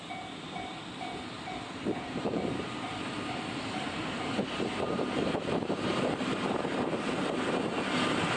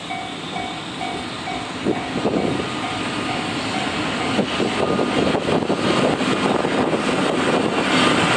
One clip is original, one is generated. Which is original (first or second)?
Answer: second